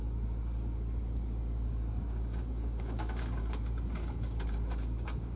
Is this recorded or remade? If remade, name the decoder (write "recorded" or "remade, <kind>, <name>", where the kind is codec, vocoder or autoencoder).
remade, codec, DAC